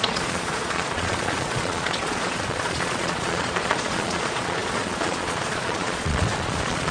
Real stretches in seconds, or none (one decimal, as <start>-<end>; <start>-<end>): none